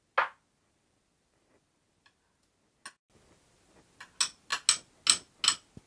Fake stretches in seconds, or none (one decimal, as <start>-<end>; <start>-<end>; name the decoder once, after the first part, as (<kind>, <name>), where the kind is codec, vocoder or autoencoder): none